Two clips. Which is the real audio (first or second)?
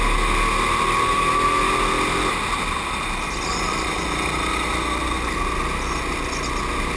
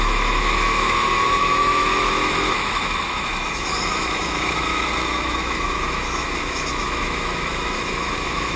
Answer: first